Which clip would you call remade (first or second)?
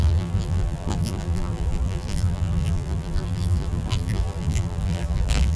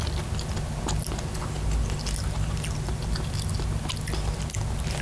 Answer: first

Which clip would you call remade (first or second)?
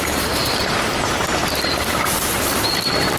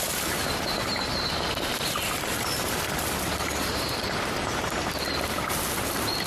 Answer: second